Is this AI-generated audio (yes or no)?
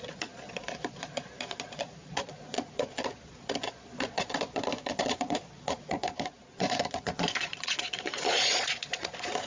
yes